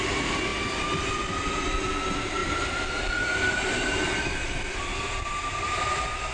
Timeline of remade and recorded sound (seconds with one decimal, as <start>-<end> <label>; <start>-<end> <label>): 0.0-6.3 recorded